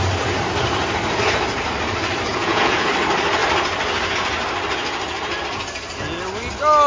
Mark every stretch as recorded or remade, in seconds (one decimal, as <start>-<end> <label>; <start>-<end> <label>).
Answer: 0.0-2.3 recorded; 2.3-2.9 remade; 2.9-6.9 recorded